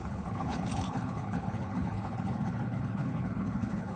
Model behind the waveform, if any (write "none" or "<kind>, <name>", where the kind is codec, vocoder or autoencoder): codec, HILCodec